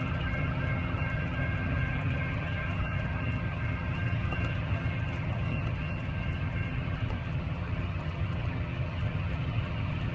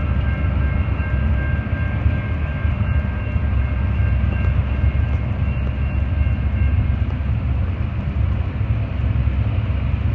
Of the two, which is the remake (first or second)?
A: first